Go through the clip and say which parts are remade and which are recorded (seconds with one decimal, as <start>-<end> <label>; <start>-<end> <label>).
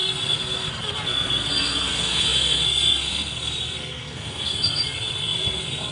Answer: 0.0-5.9 remade